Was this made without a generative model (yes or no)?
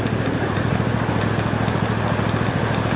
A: yes